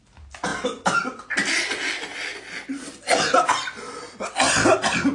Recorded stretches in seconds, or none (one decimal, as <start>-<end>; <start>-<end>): 0.0-5.1